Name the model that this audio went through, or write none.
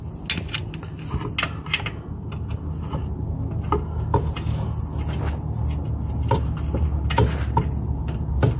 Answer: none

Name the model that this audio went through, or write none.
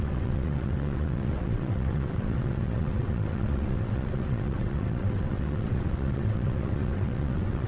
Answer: vocoder, WaveNeXt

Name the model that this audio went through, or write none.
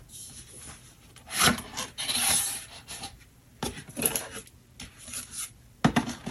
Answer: none